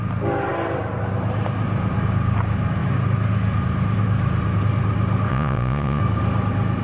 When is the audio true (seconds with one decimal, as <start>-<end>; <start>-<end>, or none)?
0.0-5.3; 6.0-6.8